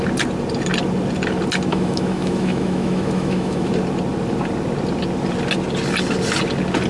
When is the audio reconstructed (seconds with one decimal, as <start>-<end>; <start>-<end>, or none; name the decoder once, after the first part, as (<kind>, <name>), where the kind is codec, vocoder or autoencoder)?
1.7-3.7 (autoencoder, DAC-VAE)